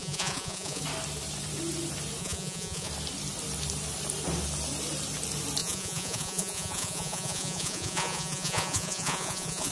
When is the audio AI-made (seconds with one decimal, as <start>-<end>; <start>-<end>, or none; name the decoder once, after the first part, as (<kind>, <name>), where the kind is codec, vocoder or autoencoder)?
0.0-0.8 (vocoder, Vocos); 2.2-2.9; 5.6-9.7